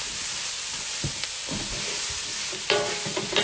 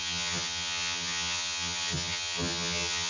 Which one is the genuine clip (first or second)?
first